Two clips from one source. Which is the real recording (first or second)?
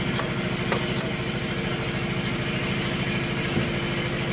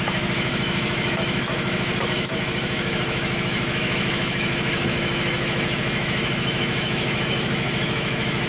first